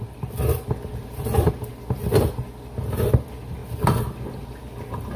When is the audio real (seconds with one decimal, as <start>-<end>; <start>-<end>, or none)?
0.0-0.9; 1.7-5.2